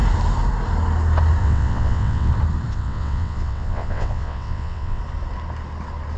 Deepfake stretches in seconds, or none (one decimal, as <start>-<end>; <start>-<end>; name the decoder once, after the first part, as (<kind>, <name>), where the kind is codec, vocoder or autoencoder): 1.4-2.3 (vocoder, WaveNeXt); 2.7-5.0